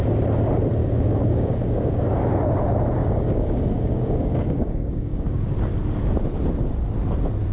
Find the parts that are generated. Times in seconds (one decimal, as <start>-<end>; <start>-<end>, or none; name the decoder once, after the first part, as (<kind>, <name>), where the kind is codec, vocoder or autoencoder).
0.8-2.0 (codec, DAC); 3.0-5.6